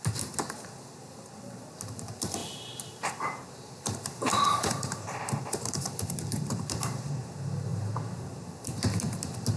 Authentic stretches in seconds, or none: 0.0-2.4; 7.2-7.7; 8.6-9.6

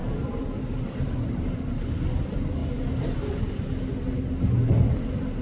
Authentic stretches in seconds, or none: 1.4-2.6; 3.2-5.4

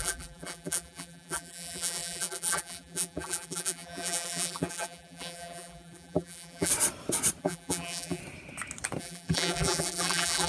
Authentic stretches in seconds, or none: 6.7-7.4; 8.2-9.0

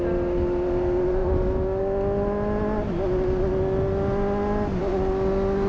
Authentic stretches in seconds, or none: 0.0-5.7

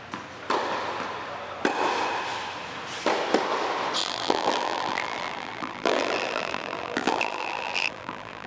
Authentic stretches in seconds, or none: 0.0-4.0

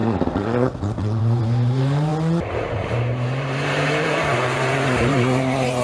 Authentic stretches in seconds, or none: 0.0-1.2; 2.1-2.6